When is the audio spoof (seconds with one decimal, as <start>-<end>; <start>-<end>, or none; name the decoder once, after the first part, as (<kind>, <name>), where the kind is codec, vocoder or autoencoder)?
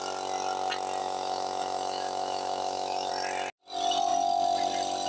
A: 1.0-3.1 (autoencoder, DAC-VAE)